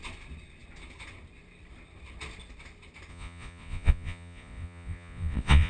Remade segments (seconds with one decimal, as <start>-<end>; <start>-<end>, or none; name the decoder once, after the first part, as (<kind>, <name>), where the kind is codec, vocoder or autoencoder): 3.1-5.7 (vocoder, Vocos)

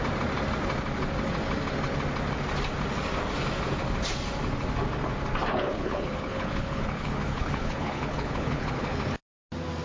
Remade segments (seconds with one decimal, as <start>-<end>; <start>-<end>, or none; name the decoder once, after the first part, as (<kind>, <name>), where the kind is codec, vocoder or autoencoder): 5.5-9.0 (codec, HILCodec)